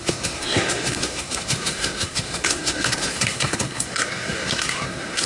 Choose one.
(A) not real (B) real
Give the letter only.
A